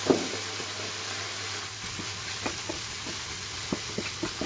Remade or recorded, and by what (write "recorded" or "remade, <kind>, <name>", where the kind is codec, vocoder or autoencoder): recorded